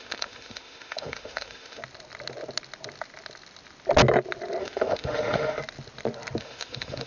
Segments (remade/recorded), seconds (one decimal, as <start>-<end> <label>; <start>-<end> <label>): 0.0-1.8 remade; 1.8-4.6 recorded; 4.6-5.6 remade; 5.6-6.4 recorded; 6.4-7.1 remade